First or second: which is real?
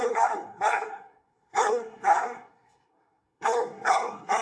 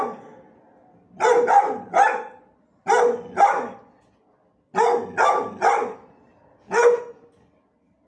second